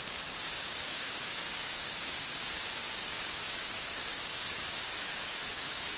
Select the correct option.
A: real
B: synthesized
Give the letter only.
B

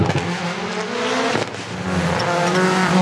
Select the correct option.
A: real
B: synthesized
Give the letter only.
A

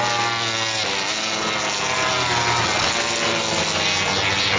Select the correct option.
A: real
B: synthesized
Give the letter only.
A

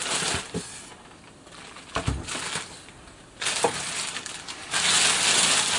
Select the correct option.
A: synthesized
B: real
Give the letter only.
B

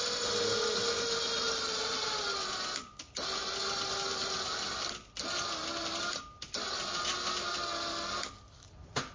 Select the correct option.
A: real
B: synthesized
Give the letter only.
A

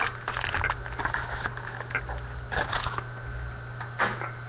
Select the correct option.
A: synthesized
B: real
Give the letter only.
B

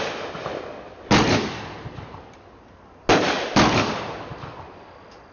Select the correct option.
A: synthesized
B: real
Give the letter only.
B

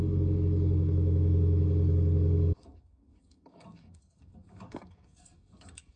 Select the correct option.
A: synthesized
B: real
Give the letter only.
A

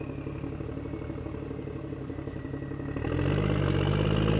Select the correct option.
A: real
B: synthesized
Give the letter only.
A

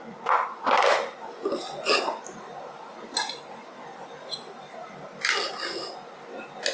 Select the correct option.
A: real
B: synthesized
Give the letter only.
A